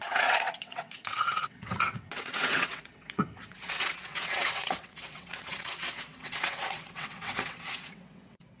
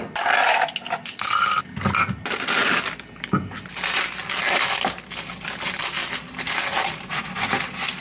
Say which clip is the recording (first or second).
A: second